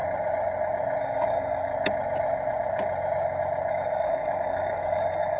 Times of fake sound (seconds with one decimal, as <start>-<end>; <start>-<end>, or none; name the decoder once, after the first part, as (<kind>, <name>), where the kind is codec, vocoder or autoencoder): 1.0-1.7 (codec, DAC); 3.7-5.4